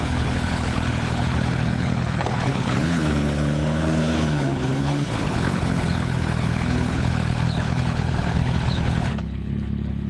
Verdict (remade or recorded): remade